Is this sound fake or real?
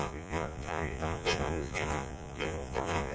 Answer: fake